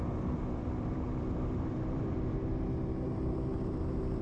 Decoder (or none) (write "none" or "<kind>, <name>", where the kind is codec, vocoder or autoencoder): vocoder, BigVGAN v2